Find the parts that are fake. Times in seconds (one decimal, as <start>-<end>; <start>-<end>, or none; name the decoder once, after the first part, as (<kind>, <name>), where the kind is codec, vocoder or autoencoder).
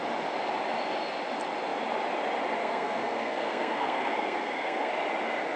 2.6-4.9 (codec, SNAC)